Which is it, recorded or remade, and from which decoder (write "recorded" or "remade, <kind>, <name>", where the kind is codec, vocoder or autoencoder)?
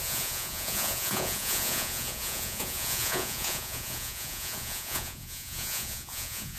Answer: remade, vocoder, Vocos